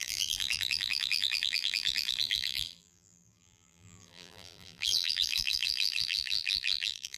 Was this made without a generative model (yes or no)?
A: no